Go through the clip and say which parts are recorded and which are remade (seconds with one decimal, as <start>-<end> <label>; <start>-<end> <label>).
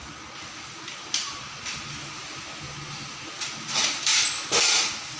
0.0-1.2 recorded; 1.2-2.3 remade; 2.3-5.2 recorded